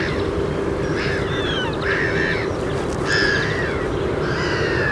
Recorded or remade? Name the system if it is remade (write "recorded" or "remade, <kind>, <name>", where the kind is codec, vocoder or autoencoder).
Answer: recorded